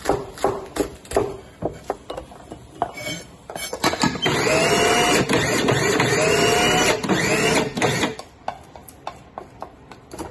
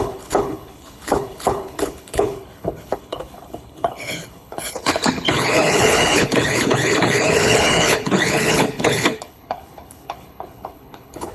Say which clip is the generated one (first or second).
second